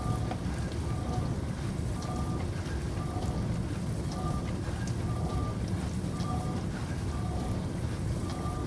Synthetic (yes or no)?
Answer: no